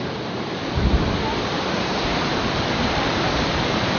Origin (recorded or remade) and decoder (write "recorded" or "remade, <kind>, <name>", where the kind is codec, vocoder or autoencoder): recorded